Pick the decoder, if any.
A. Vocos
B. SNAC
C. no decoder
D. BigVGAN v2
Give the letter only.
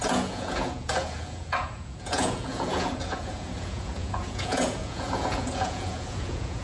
A